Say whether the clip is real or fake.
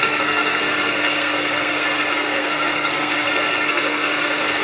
fake